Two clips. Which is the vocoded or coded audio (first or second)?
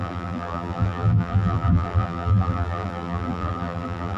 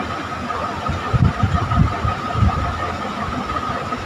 first